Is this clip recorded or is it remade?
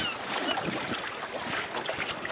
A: recorded